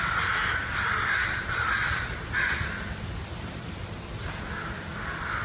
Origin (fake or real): real